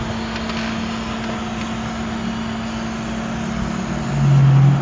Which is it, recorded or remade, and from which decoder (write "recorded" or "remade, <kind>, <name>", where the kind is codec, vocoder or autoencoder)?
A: recorded